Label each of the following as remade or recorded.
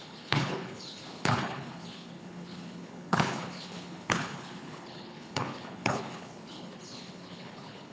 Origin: remade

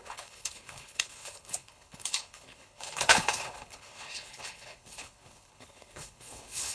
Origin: remade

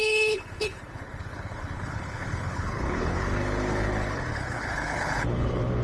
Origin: remade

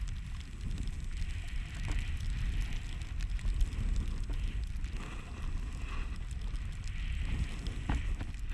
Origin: recorded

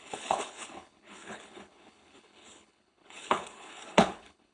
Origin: remade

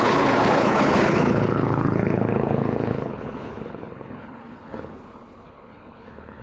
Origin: remade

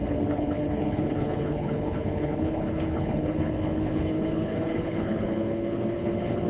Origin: remade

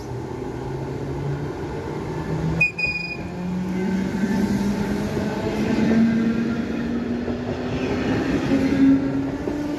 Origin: recorded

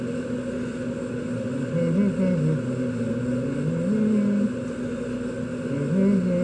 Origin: recorded